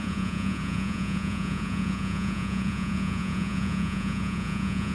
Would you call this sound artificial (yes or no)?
yes